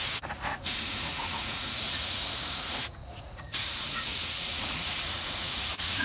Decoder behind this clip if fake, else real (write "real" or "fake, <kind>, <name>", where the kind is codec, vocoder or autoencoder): fake, vocoder, Vocos